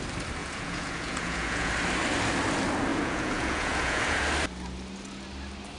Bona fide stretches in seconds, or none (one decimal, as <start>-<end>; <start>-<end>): 0.0-0.4; 1.7-2.9; 4.2-5.8